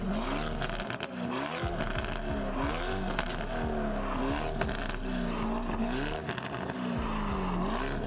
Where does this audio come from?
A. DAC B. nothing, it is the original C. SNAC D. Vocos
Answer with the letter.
B